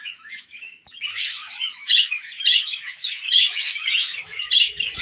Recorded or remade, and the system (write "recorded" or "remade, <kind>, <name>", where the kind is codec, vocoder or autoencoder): remade, autoencoder, DAC-VAE